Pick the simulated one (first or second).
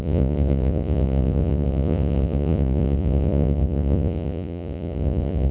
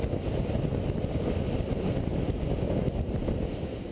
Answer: first